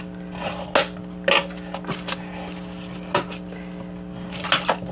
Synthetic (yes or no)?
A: no